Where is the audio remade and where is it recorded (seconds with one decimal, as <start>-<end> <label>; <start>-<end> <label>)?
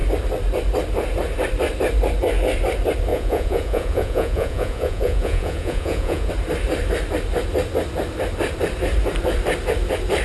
0.0-3.1 recorded; 3.1-6.3 remade; 6.3-10.2 recorded